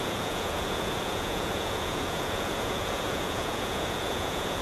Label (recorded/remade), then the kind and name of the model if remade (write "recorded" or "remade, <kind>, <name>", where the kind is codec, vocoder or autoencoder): remade, vocoder, Vocos